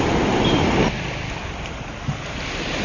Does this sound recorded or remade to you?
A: recorded